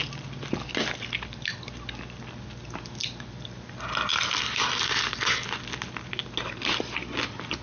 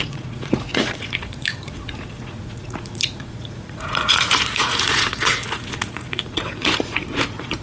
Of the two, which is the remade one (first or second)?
second